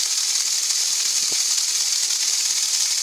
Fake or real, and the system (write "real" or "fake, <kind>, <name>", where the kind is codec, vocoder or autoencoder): real